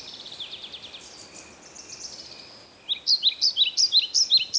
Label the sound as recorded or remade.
recorded